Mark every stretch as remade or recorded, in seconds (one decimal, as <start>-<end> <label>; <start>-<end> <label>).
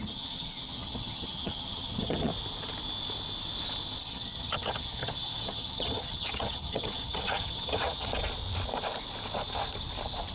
0.0-2.3 remade; 2.3-4.0 recorded; 4.0-8.1 remade; 8.1-10.3 recorded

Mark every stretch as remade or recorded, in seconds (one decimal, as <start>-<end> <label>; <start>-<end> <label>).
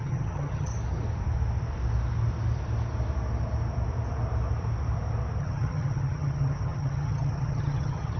0.0-0.7 remade; 0.7-5.4 recorded; 5.4-8.2 remade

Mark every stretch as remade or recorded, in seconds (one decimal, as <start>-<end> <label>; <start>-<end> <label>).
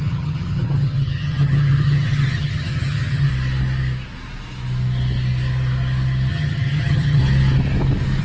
0.0-3.3 remade; 3.3-6.3 recorded; 6.3-7.2 remade; 7.2-8.2 recorded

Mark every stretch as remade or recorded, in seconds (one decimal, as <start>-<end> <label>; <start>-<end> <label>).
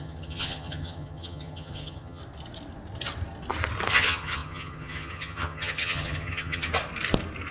0.0-2.2 remade; 2.2-3.9 recorded; 3.9-6.7 remade; 6.7-7.5 recorded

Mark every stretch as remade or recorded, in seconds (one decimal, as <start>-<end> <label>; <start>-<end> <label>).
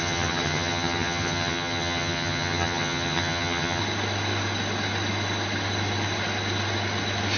0.0-3.8 remade; 3.8-7.4 recorded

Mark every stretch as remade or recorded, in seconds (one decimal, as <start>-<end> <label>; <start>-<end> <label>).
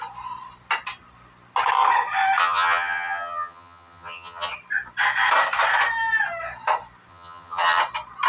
0.0-2.4 recorded; 2.4-4.5 remade; 4.5-7.1 recorded; 7.1-7.8 remade; 7.8-8.3 recorded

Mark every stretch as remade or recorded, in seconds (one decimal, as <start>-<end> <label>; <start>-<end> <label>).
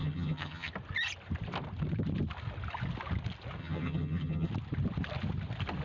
0.0-0.7 remade; 0.7-3.6 recorded; 3.6-4.5 remade; 4.5-5.8 recorded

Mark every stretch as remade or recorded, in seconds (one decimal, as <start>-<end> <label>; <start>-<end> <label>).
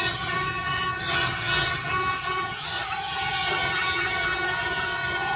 0.0-5.4 remade